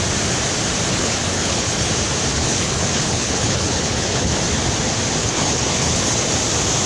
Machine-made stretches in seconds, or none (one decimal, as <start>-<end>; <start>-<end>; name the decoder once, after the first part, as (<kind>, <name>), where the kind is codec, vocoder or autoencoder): 0.9-1.9 (codec, HILCodec); 2.4-4.3; 5.2-6.3